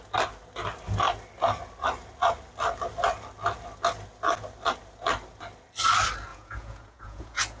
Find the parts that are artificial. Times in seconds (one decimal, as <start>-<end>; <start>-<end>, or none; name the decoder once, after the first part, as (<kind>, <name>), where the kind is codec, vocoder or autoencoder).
6.3-7.6 (vocoder, Vocos)